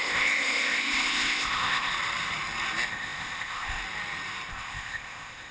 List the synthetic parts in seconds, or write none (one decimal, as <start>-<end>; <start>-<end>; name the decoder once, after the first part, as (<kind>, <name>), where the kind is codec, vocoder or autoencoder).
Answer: 0.0-1.9 (codec, ZipCodec); 2.9-3.8; 4.5-5.5